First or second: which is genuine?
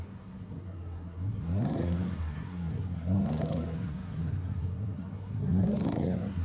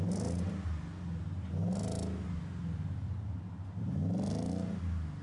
second